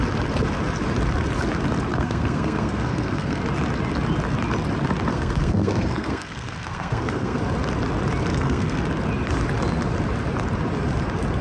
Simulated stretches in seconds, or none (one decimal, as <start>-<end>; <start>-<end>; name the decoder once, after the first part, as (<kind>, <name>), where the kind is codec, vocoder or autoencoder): 1.9-3.4 (codec, SNAC); 5.1-7.4; 8.3-8.8